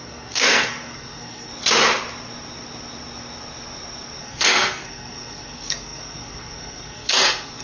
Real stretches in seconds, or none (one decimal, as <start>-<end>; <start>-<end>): 1.5-4.2